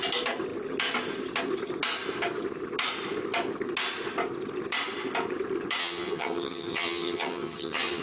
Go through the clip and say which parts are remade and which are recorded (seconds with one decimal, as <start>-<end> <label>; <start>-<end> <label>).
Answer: 0.0-5.8 recorded; 5.8-8.0 remade